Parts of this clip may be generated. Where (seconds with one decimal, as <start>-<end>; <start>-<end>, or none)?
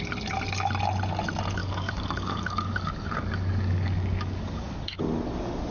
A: 1.6-5.0